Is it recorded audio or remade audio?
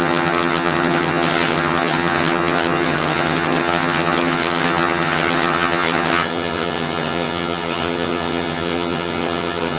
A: remade